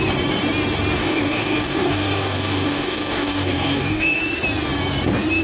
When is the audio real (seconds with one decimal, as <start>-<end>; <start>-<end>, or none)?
0.0-1.0; 4.2-5.4

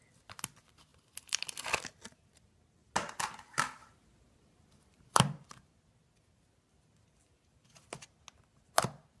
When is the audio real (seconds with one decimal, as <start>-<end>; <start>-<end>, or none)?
0.0-9.2

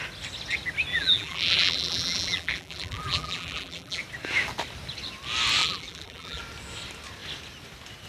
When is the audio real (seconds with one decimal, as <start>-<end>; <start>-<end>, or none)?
0.0-0.9; 4.0-5.6; 6.4-8.1

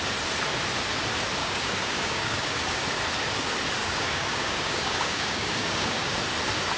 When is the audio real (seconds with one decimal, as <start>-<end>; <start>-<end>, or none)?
0.0-1.4; 2.8-3.8; 6.2-6.8

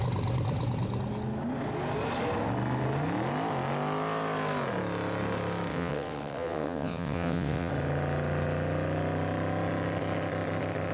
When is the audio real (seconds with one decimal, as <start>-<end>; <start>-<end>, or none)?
0.0-5.7; 7.7-10.9

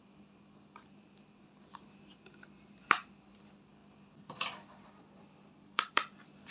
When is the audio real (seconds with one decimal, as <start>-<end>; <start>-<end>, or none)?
none

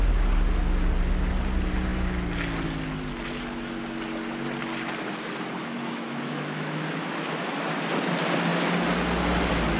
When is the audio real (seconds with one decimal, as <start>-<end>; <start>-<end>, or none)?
0.0-5.6; 7.3-9.8

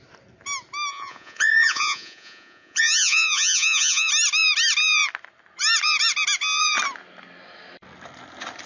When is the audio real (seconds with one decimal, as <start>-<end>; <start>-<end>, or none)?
0.0-0.9; 4.1-8.7